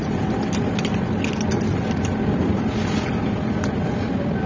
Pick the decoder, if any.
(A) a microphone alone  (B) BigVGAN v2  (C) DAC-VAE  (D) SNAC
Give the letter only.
A